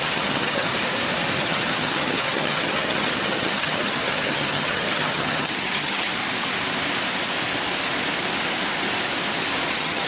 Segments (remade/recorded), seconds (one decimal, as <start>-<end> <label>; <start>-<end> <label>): 0.0-0.7 remade; 0.7-1.4 recorded; 1.4-6.2 remade; 6.2-9.7 recorded; 9.7-10.1 remade